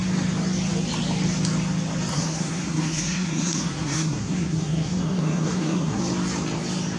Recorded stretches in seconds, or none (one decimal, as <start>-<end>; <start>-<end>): 0.0-2.1; 6.0-7.0